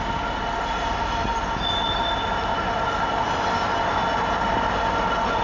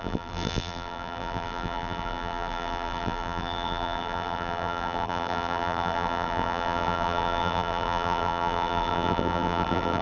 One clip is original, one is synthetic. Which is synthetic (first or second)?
second